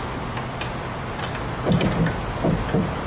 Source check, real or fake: real